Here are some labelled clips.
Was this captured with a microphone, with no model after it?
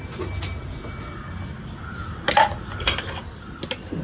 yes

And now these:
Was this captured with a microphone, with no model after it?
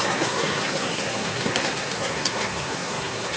no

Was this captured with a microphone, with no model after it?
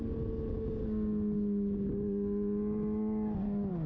yes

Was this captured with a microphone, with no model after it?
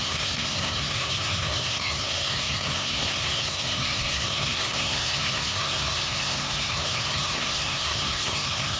no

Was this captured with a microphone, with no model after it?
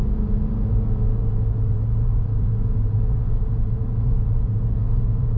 no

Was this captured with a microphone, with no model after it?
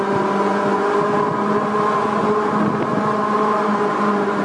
yes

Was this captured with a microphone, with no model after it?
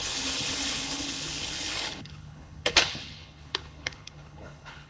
no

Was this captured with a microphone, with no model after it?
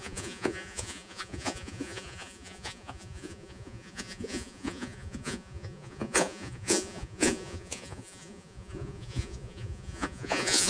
no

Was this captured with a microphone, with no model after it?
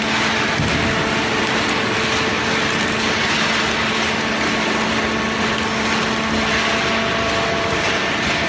yes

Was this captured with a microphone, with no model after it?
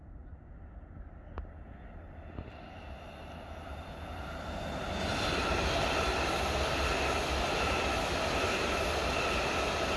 yes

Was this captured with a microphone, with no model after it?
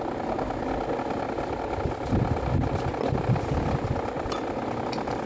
yes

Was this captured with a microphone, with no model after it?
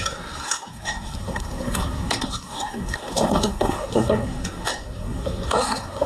no